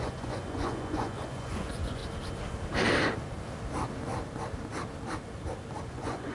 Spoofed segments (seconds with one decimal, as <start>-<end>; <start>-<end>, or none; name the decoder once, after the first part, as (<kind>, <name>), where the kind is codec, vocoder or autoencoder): 0.0-2.0 (vocoder, Vocos); 5.8-6.3

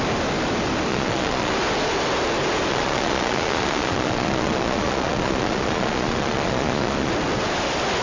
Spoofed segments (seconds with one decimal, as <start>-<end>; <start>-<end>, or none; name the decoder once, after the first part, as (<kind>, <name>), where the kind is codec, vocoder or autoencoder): 0.9-1.5 (vocoder, Vocos); 2.7-7.1